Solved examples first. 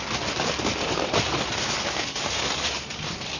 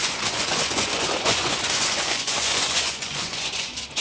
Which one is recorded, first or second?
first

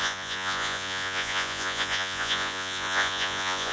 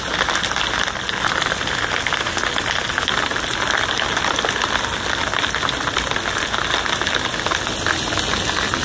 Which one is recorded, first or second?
second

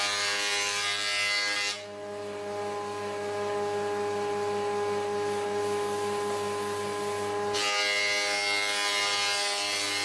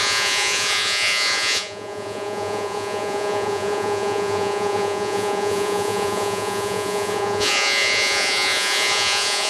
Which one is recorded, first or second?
first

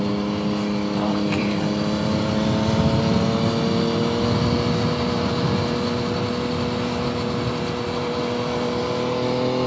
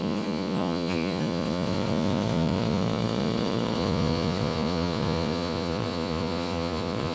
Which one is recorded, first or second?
first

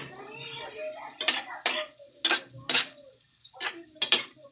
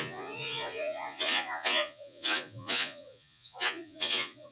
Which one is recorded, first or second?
first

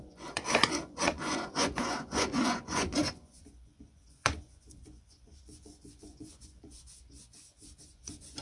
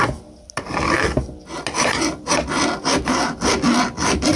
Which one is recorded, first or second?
second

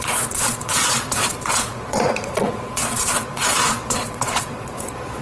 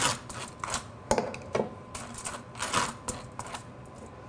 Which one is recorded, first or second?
second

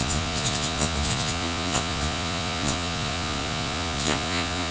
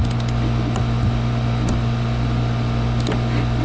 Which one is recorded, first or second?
second